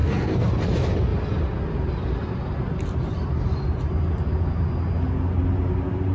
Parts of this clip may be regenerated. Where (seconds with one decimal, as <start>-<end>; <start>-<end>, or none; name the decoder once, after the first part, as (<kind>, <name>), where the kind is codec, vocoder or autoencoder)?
0.0-0.5 (codec, SNAC)